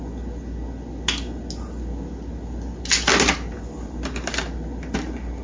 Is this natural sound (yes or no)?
yes